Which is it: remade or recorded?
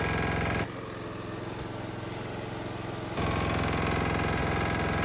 recorded